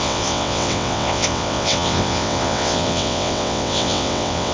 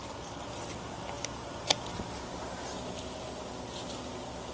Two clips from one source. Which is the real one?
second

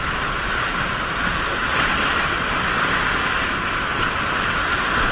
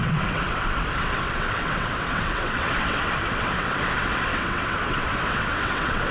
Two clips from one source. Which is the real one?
first